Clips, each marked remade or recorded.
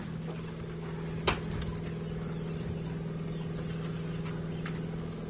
recorded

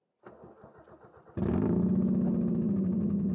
recorded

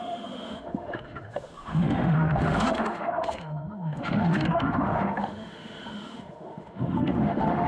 remade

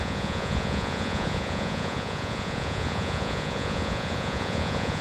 remade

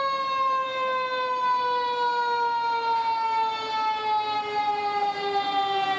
recorded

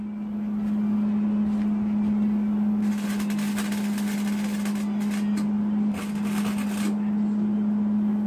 recorded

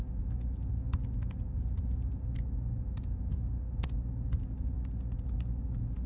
recorded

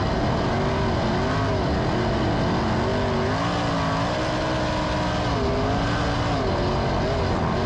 recorded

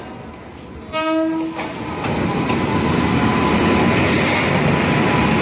recorded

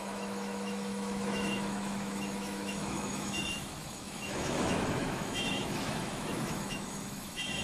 remade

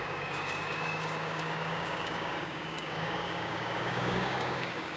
remade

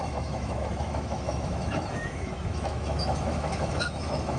remade